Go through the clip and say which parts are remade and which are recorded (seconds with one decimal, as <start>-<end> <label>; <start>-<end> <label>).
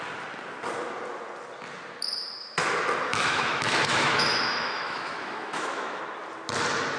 0.0-3.1 recorded; 3.1-6.0 remade; 6.0-7.0 recorded